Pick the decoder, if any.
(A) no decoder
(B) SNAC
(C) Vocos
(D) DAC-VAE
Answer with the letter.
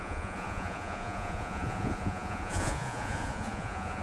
C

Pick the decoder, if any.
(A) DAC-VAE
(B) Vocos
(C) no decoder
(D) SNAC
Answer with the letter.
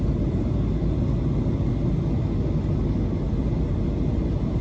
C